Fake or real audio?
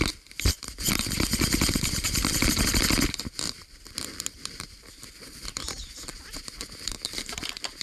real